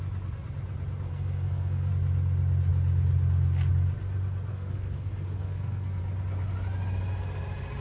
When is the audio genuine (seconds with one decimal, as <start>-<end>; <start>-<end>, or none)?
0.0-1.1; 1.9-4.5; 6.0-7.8